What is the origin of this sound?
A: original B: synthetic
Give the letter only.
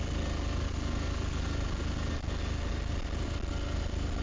A